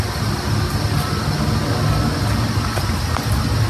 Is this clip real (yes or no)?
yes